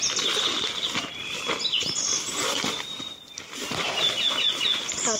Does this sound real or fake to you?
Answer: real